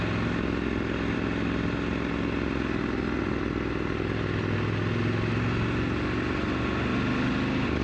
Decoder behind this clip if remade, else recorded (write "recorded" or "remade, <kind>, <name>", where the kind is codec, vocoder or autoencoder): recorded